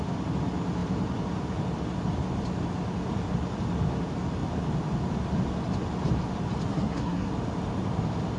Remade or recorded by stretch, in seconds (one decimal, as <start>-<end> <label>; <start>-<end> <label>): 0.0-6.7 recorded; 6.7-7.3 remade; 7.3-8.4 recorded